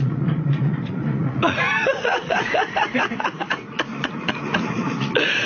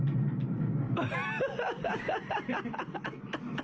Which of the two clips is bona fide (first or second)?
second